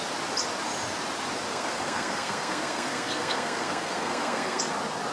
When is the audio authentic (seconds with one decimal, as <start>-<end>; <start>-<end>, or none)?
0.0-1.5; 4.6-5.1